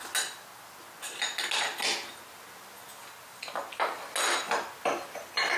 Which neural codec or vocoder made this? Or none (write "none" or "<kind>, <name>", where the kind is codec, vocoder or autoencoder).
none